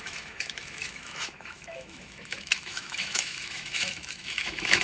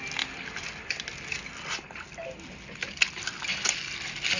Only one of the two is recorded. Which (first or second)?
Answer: second